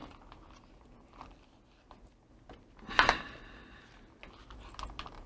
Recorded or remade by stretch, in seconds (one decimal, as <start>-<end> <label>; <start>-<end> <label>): 0.0-5.3 recorded